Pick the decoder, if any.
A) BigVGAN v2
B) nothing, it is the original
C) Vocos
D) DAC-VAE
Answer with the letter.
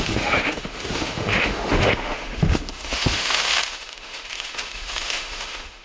D